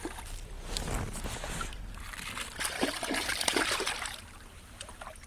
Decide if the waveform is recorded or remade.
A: recorded